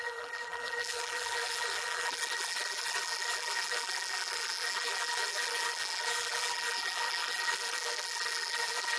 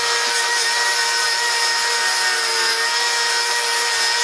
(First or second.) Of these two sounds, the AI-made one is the first